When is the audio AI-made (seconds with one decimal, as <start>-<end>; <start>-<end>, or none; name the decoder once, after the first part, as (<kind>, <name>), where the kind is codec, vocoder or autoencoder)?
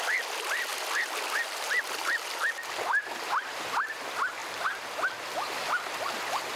none